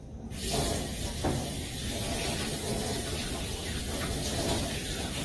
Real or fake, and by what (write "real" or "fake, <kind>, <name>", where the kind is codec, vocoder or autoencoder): fake, vocoder, BigVGAN v2